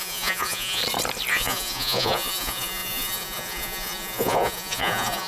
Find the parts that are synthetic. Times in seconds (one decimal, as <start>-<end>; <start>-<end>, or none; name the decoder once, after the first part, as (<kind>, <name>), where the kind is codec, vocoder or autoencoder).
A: 0.0-0.8 (vocoder, Vocos); 1.3-5.3